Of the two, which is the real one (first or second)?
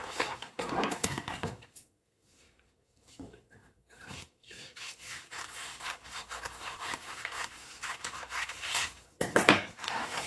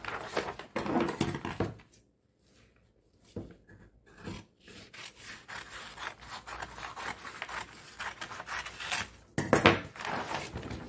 second